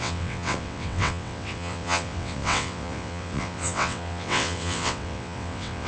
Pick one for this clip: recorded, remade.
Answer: remade